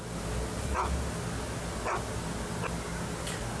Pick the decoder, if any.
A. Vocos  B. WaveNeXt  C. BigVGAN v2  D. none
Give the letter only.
D